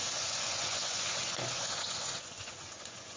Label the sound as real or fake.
fake